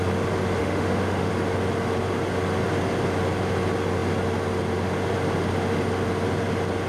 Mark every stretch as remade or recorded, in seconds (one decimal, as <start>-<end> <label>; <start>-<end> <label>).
0.0-0.6 recorded; 0.6-1.3 remade; 1.3-6.9 recorded